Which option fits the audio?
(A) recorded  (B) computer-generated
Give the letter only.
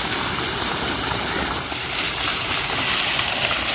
B